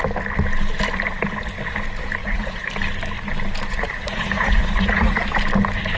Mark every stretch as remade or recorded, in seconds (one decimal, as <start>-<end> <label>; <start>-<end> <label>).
0.0-2.2 recorded; 2.2-2.7 remade; 2.7-3.7 recorded; 3.7-5.2 remade; 5.2-6.0 recorded